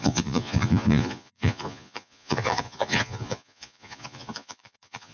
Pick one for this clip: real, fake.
fake